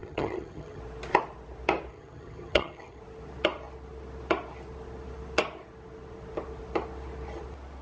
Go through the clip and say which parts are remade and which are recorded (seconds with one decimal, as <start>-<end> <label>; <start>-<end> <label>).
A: 0.0-0.8 remade; 0.8-1.9 recorded; 1.9-3.0 remade; 3.0-7.8 recorded